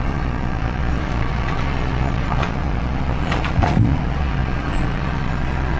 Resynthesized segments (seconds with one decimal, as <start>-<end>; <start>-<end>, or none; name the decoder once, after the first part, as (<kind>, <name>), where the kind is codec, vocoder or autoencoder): 0.0-5.8 (vocoder, Vocos)